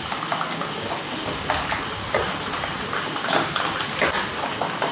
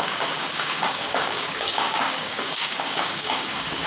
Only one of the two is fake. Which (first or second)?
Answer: second